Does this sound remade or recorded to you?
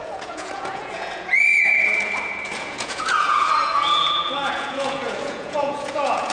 remade